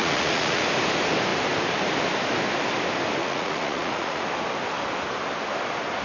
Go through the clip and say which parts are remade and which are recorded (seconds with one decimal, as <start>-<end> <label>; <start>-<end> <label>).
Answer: 0.0-0.6 remade; 0.6-3.2 recorded; 3.2-4.3 remade; 4.3-6.0 recorded